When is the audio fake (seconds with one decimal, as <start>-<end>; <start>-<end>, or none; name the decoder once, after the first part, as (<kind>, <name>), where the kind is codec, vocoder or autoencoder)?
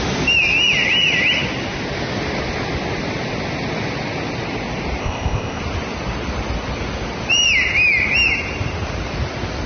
5.0-5.6 (codec, ZipCodec)